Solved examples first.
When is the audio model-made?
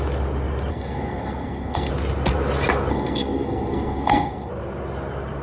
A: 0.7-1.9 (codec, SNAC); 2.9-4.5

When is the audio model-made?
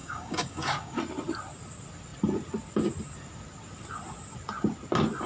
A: 0.0-1.0 (codec, DAC)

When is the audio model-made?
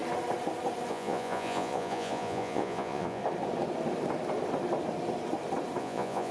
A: 0.9-3.2 (vocoder, Vocos); 5.8-6.3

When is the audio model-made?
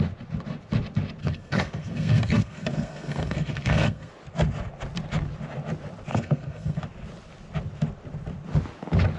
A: 1.2-4.1 (codec, SNAC); 6.1-6.8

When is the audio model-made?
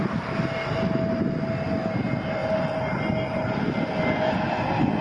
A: none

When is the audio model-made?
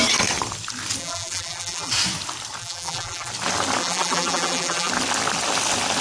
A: 1.0-1.9 (vocoder, BigVGAN v2); 2.6-3.3; 3.8-4.9